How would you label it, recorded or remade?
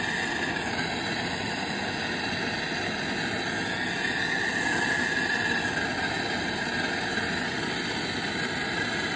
recorded